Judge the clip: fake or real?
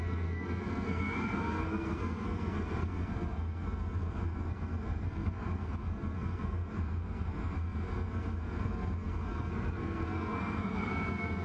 fake